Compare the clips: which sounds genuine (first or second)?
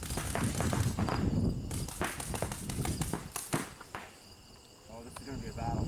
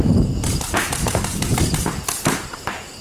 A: first